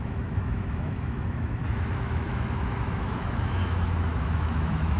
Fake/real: fake